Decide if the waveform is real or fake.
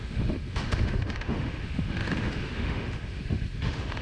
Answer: fake